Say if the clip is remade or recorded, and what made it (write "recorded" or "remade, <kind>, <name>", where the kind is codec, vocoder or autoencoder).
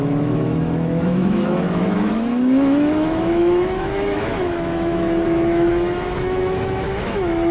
remade, autoencoder, DAC-VAE